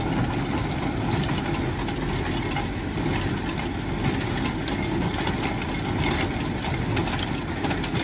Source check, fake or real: real